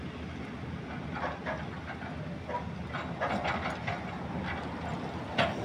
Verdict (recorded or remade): recorded